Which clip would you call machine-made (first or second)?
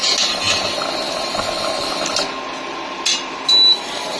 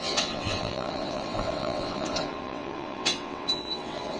second